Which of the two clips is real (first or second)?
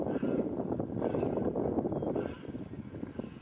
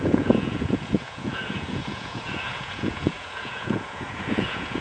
first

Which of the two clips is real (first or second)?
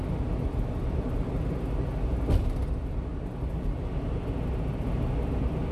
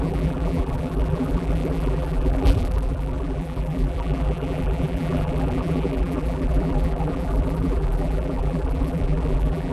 first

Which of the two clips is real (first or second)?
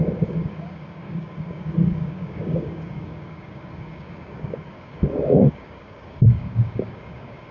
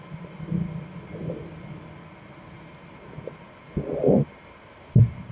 second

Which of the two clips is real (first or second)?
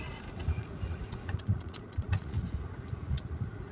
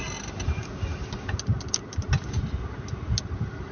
second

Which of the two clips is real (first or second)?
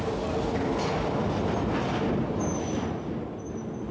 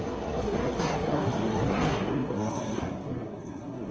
first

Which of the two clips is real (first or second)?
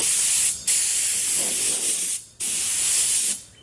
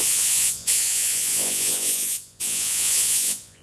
first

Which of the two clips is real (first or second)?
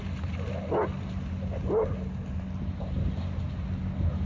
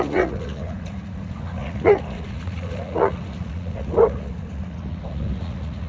first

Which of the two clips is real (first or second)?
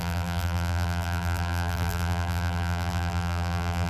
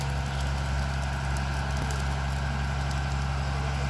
second